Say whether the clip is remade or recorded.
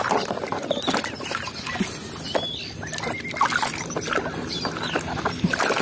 recorded